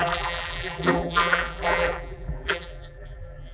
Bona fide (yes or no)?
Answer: no